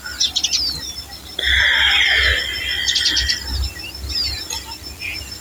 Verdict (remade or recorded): recorded